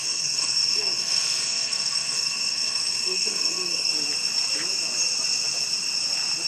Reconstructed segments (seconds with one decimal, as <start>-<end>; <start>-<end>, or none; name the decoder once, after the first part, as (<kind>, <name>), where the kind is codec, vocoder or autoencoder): 0.0-3.9 (codec, SNAC)